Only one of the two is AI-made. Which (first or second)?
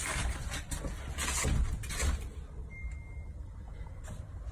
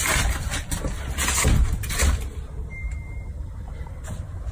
second